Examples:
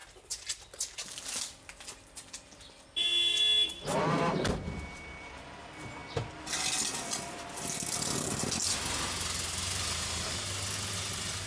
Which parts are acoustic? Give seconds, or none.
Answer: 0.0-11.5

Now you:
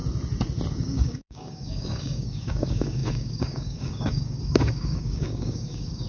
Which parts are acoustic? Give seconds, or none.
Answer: 0.0-0.7

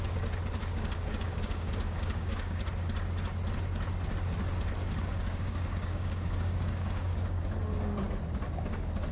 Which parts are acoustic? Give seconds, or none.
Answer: 0.0-0.6; 2.6-4.8; 7.4-9.1